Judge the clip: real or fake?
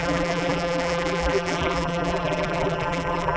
fake